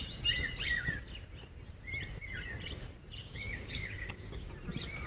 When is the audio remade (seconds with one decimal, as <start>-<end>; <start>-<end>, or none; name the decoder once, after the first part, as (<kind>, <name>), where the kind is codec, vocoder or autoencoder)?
3.2-4.5 (codec, DAC)